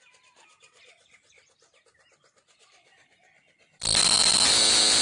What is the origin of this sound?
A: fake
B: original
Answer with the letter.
A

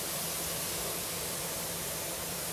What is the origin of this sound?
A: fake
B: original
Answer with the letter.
B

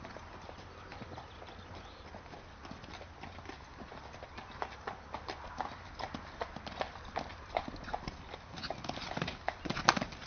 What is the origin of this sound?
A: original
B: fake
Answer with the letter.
A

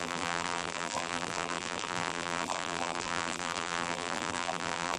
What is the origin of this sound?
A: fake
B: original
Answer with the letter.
A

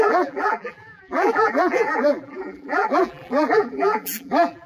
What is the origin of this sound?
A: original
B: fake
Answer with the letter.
B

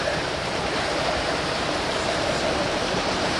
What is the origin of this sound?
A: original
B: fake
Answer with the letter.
B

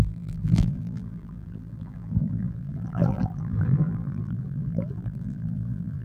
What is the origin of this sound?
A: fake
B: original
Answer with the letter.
A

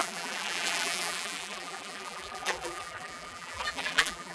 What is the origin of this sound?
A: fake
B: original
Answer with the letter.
A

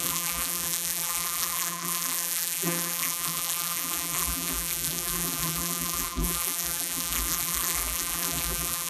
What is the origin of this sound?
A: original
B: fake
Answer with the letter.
B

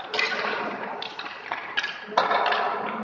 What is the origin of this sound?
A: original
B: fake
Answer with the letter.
B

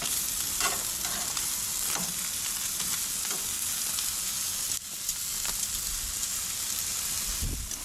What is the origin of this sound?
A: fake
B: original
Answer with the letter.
B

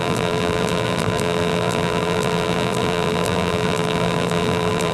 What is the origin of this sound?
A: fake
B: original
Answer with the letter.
A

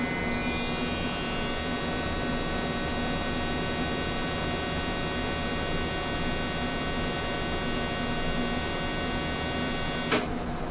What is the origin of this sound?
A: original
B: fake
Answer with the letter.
A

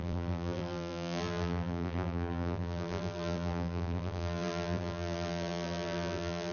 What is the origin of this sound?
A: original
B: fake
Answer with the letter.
B